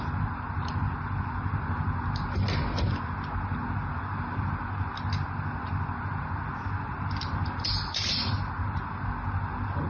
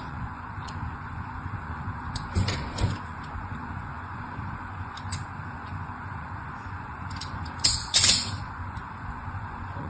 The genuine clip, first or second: first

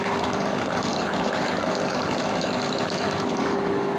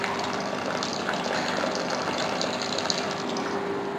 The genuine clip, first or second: second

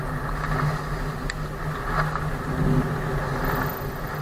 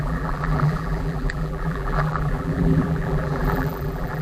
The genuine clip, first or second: first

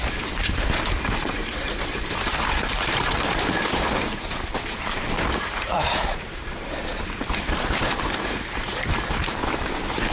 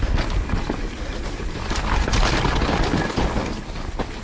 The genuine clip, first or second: second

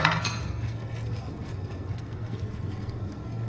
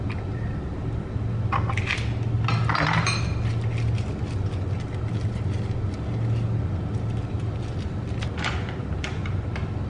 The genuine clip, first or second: second